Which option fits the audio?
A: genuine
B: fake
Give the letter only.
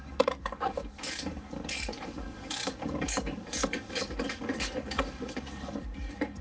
B